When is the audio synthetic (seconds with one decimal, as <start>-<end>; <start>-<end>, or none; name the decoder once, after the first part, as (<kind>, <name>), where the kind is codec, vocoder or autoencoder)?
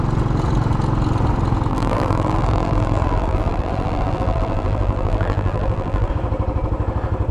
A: 1.7-6.1 (vocoder, BigVGAN v2)